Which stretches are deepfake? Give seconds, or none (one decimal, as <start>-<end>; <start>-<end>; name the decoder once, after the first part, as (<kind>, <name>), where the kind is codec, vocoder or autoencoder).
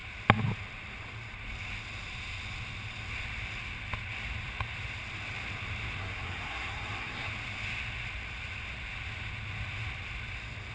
6.0-7.3 (codec, SNAC)